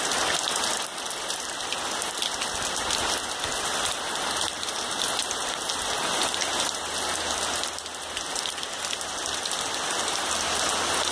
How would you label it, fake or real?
real